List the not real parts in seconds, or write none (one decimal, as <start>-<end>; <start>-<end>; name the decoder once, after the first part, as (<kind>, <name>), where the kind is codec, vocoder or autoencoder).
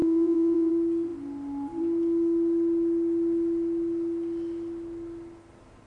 0.0-0.7 (vocoder, Vocos)